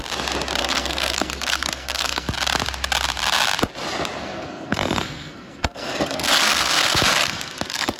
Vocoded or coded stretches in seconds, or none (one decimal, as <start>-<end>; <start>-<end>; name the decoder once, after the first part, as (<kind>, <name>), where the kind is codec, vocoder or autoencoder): 0.6-2.3 (codec, SNAC); 4.2-8.0